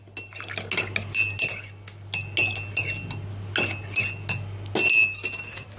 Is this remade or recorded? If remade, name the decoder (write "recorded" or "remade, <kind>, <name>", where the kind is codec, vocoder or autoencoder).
recorded